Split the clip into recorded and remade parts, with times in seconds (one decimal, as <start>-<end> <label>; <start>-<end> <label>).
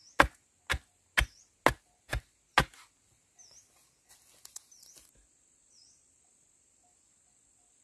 0.0-7.8 recorded